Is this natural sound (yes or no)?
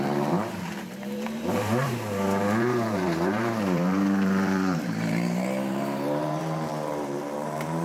no